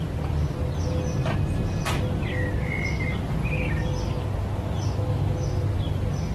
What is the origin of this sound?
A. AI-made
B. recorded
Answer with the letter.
B